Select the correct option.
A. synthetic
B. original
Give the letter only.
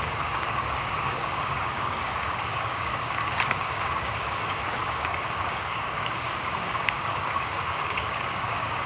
A